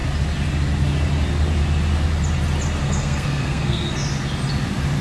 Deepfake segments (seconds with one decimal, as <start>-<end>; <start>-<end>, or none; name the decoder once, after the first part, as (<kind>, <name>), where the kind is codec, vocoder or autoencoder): 2.8-3.9 (codec, SNAC)